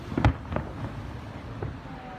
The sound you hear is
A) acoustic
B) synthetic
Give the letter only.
A